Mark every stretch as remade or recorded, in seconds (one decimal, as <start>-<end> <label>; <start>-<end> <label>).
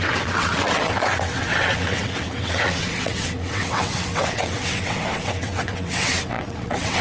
0.0-7.0 remade